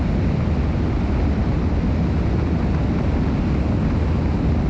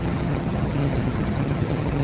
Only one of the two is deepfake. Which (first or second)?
second